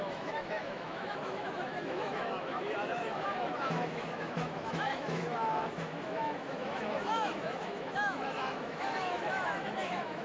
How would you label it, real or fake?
fake